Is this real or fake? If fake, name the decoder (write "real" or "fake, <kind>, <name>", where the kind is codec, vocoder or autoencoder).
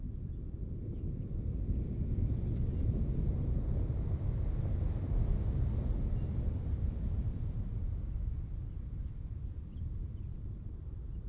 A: real